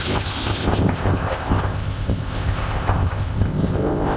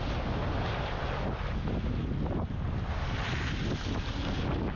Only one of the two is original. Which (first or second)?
second